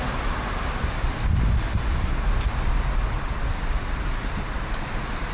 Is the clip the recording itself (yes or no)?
yes